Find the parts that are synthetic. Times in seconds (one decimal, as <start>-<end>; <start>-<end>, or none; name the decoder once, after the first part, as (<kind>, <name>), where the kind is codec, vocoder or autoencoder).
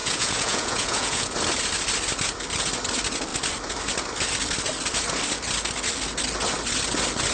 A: 0.0-1.3 (vocoder, Vocos)